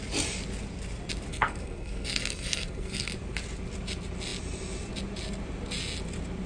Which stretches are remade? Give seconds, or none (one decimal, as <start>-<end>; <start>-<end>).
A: 1.3-3.1